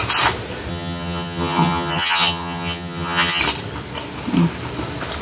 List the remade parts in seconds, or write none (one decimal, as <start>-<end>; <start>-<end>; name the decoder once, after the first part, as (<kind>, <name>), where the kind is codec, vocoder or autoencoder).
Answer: 0.7-3.4 (vocoder, HiFi-GAN)